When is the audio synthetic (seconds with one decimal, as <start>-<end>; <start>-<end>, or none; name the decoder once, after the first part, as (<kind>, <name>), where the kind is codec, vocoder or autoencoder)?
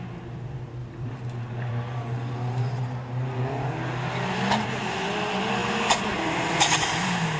0.8-1.7 (vocoder, BigVGAN v2)